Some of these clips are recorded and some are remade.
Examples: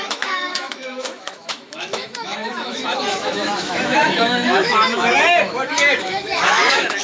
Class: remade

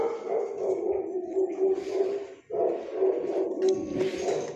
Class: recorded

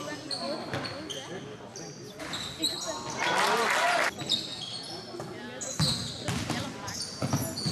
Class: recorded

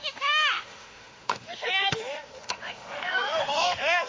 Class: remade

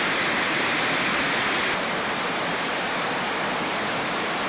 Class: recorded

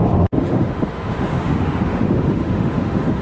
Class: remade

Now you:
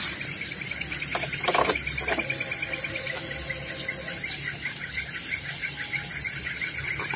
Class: recorded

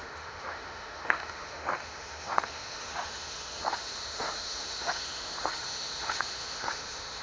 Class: remade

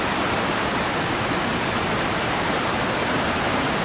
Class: recorded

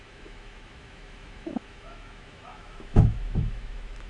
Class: remade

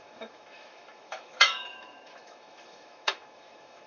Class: remade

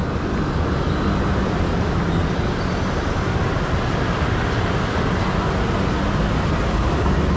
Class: recorded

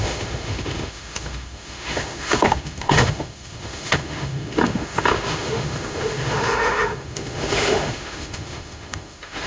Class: remade